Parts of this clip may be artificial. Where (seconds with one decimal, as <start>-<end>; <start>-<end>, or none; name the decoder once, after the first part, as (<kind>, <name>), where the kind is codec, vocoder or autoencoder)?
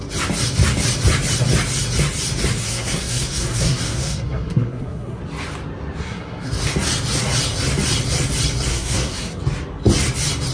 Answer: 2.6-5.2 (codec, SNAC); 6.0-6.5; 8.7-9.4